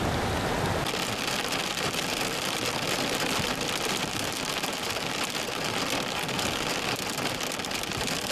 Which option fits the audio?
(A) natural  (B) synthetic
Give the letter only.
A